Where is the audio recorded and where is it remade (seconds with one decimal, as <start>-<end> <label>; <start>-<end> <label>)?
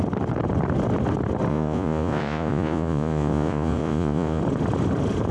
0.0-1.5 recorded; 1.5-4.4 remade; 4.4-5.3 recorded